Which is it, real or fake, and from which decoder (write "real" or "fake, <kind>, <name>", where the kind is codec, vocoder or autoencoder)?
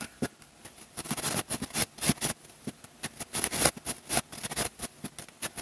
real